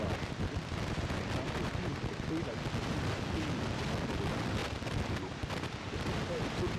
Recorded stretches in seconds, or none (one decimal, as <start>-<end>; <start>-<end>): 0.0-6.8